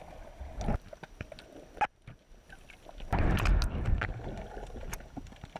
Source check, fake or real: real